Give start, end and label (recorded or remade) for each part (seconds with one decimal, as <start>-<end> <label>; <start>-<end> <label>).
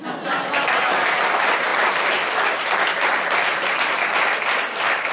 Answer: 0.0-5.1 recorded